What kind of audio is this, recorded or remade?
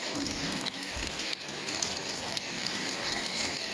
remade